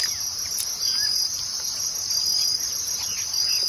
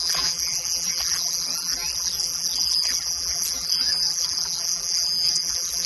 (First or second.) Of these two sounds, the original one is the first